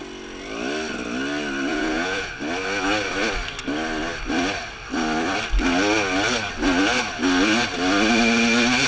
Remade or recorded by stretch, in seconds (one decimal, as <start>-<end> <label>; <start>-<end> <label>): 0.0-1.7 recorded; 1.7-2.3 remade; 2.3-8.9 recorded